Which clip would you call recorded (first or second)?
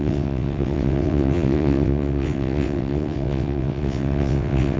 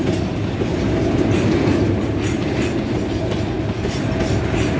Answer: second